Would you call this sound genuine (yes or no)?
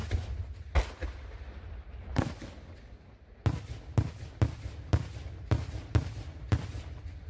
yes